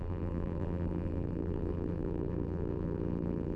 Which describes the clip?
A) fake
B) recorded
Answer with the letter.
A